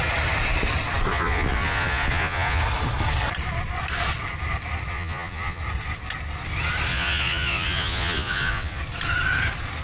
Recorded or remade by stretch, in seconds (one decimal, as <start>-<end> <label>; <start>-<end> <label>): 0.0-1.1 recorded; 1.1-2.6 remade; 2.6-4.9 recorded; 4.9-5.6 remade; 5.6-6.9 recorded; 6.9-8.8 remade; 8.8-9.8 recorded